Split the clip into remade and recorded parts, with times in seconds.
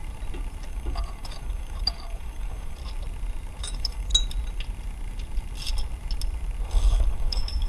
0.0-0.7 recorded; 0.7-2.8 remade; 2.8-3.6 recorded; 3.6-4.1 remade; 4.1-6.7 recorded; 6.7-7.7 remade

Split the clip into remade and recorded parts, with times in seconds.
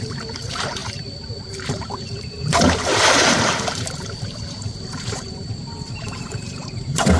0.0-7.2 remade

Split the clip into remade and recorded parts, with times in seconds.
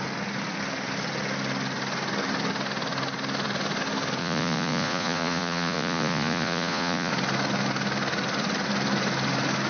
0.0-4.2 recorded; 4.2-7.1 remade; 7.1-9.7 recorded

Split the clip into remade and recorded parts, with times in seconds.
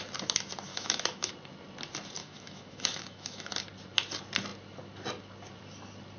0.0-0.7 recorded; 0.7-1.3 remade; 1.3-2.2 recorded; 2.2-3.5 remade; 3.5-6.2 recorded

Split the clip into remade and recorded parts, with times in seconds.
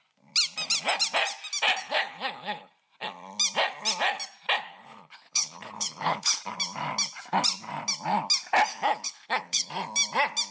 0.0-1.8 recorded; 1.8-2.7 remade; 2.7-4.7 recorded; 4.7-6.4 remade; 6.4-8.7 recorded; 8.7-9.7 remade; 9.7-10.5 recorded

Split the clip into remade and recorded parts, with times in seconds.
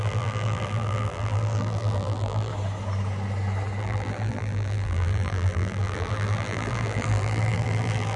0.0-2.5 remade; 2.5-3.8 recorded; 3.8-8.2 remade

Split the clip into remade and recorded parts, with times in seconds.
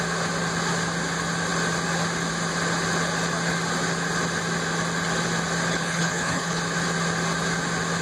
0.0-5.7 recorded; 5.7-6.6 remade; 6.6-8.0 recorded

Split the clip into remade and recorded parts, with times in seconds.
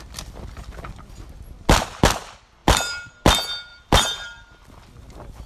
0.0-2.6 recorded; 2.6-3.1 remade; 3.1-3.7 recorded; 3.7-4.6 remade; 4.6-5.5 recorded